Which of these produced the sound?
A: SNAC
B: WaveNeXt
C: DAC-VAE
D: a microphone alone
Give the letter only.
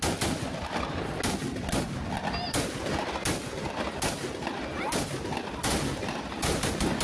D